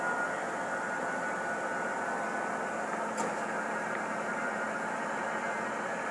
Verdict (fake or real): real